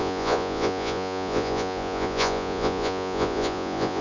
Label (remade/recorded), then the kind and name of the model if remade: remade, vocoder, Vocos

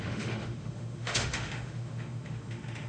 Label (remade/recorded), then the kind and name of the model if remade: remade, autoencoder, DAC-VAE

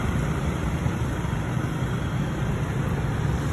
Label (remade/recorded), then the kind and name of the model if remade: recorded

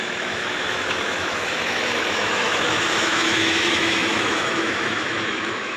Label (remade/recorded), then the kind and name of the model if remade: remade, autoencoder, DAC-VAE